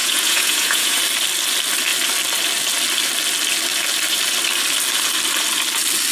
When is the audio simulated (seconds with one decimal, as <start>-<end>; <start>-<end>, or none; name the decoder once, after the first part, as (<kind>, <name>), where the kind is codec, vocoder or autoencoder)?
0.0-1.0 (vocoder, Vocos)